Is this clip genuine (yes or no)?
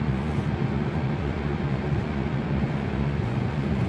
no